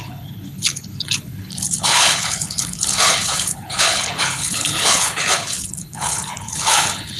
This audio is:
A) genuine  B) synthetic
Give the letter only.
B